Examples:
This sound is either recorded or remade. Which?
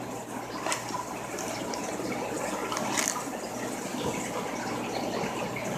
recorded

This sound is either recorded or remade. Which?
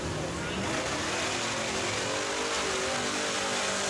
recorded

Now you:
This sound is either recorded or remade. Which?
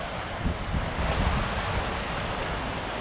recorded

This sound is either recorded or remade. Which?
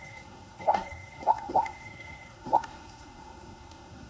remade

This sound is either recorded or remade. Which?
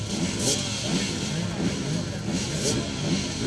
recorded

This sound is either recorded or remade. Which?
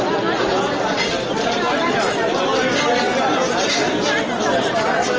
recorded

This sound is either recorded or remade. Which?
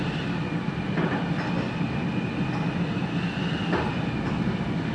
recorded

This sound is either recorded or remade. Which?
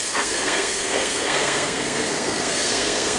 remade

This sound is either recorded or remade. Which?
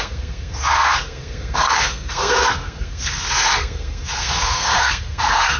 remade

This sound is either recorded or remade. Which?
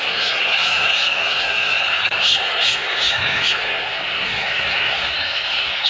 remade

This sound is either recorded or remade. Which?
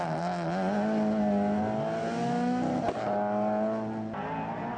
recorded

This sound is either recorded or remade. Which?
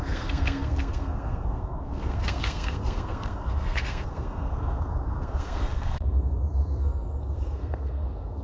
remade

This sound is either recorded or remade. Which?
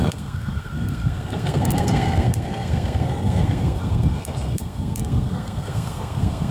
remade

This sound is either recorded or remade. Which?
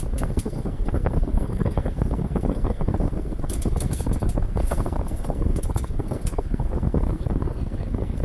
remade